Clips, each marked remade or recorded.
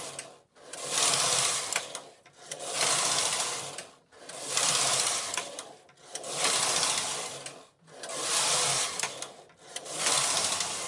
recorded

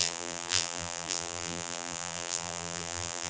remade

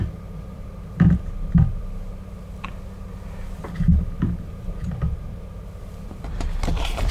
remade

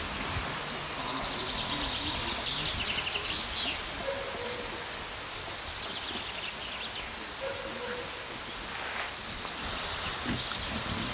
recorded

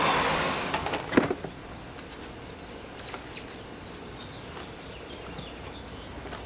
recorded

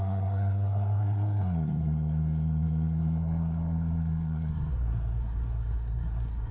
remade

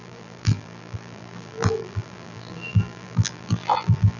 remade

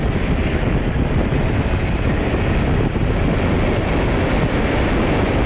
recorded